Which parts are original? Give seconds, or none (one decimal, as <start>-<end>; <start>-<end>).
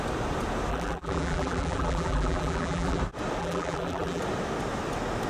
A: 0.0-0.7; 3.0-3.4; 4.2-5.3